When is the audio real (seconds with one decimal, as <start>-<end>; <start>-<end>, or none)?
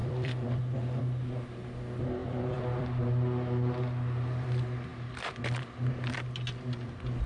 0.6-2.2; 3.0-4.9; 5.4-7.3